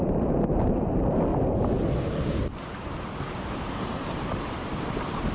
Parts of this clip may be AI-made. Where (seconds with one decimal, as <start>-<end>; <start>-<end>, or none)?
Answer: 0.0-1.3; 3.3-5.3